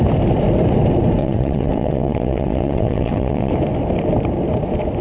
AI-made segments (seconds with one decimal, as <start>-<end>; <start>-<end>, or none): 1.2-3.5